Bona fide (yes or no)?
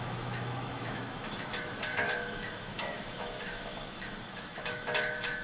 no